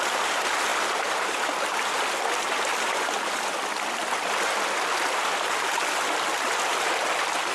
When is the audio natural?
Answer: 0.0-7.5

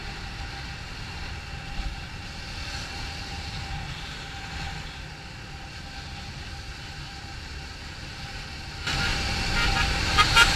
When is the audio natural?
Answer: 0.0-9.1

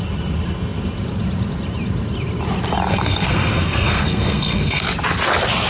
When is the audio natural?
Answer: 0.0-2.9; 4.8-5.7

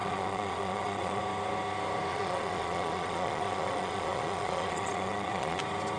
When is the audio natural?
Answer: 1.2-2.1; 5.6-6.0

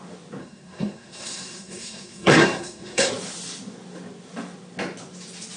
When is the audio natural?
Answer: 0.0-0.4; 3.1-5.6